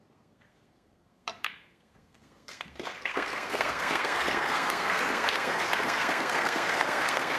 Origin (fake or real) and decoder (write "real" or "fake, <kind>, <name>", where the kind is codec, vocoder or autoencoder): fake, codec, SNAC